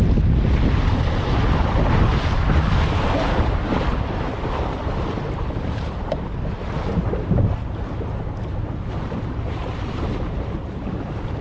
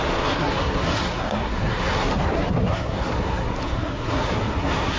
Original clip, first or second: first